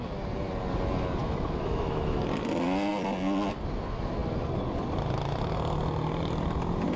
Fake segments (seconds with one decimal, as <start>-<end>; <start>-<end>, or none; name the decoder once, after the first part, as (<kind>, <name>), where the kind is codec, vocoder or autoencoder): 1.2-2.2 (autoencoder, DAC-VAE)